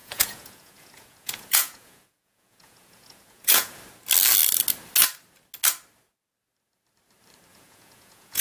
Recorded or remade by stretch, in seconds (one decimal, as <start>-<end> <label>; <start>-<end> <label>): 0.0-3.8 remade; 3.8-7.5 recorded; 7.5-8.4 remade